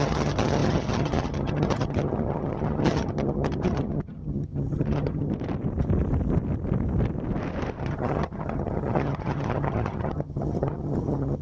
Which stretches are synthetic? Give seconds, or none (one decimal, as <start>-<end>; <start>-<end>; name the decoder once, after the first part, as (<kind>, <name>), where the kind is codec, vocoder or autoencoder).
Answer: 0.0-5.3 (vocoder, HiFi-GAN); 7.8-11.4